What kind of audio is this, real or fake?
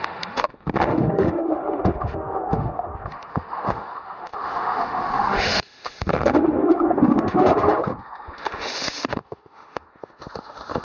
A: fake